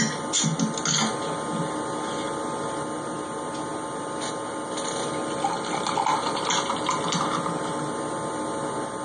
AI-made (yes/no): no